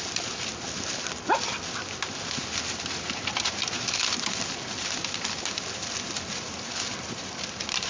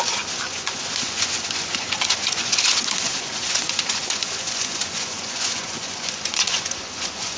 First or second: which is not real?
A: second